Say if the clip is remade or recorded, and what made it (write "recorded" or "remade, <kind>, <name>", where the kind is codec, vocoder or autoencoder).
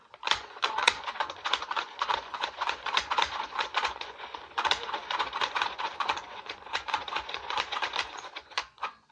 remade, vocoder, Vocos